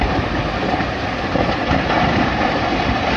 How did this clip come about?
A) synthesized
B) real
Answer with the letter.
A